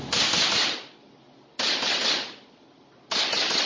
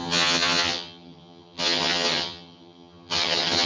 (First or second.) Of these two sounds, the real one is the first